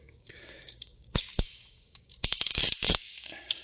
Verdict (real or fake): fake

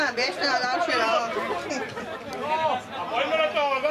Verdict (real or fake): real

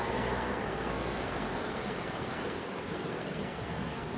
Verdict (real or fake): fake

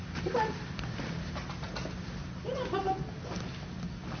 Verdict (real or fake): real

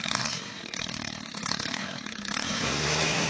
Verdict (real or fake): fake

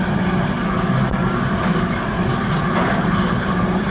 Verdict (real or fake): real